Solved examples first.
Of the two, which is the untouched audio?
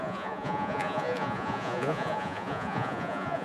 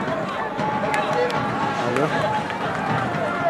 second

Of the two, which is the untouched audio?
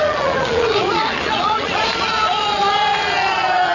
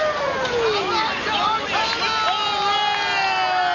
second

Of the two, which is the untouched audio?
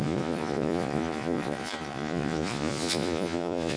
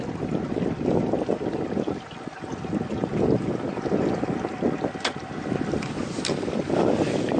second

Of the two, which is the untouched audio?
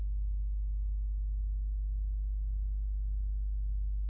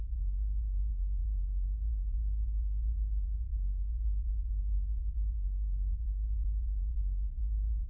first